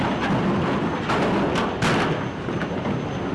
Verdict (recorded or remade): recorded